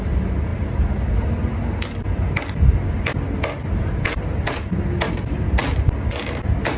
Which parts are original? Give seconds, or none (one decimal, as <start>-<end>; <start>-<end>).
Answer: 0.0-6.8